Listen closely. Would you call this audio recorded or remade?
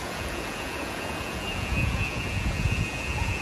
remade